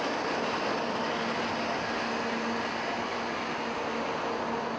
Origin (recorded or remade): recorded